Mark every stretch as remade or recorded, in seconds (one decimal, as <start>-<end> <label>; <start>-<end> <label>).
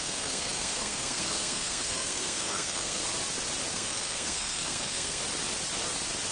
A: 0.0-3.0 remade; 3.0-3.7 recorded; 3.7-5.2 remade; 5.2-6.3 recorded